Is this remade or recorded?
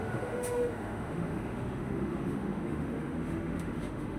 remade